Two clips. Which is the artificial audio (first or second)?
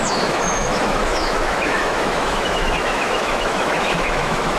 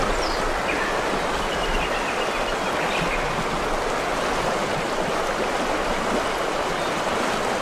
first